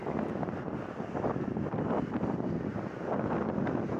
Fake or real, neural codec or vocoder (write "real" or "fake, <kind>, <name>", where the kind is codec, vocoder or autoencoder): real